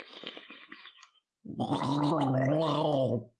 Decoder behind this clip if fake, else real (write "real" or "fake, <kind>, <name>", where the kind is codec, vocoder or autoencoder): fake, autoencoder, DAC-VAE